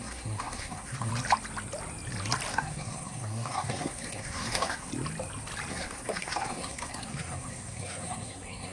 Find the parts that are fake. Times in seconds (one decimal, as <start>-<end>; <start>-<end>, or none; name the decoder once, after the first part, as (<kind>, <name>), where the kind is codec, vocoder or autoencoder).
0.0-1.1 (codec, SNAC); 2.5-4.9; 5.7-8.7